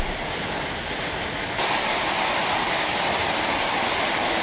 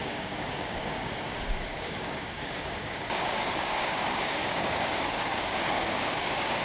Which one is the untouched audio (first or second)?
first